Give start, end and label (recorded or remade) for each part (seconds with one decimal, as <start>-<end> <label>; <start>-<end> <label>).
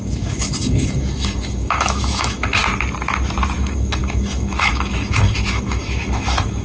0.0-2.6 remade; 2.6-3.6 recorded; 3.6-6.6 remade